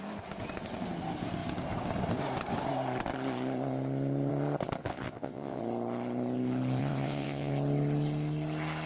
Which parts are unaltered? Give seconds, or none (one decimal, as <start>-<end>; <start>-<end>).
0.0-4.8; 5.6-6.8; 7.5-8.9